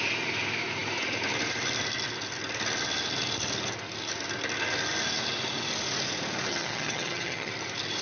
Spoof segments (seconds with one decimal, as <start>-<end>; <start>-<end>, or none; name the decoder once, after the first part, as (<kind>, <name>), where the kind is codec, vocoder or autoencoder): 6.5-7.5 (vocoder, HiFi-GAN)